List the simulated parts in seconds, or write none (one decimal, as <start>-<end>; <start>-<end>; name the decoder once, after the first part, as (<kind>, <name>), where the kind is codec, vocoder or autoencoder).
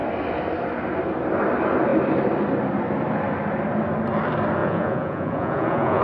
4.6-6.0 (vocoder, Vocos)